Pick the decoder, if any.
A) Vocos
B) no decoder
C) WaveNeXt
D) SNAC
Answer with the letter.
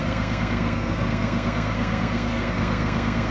D